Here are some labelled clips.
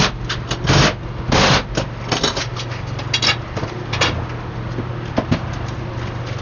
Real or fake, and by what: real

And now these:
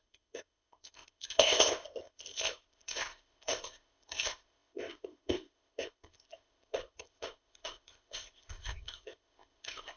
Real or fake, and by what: fake, codec, ZipCodec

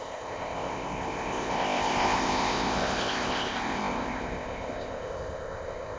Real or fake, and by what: fake, codec, ZipCodec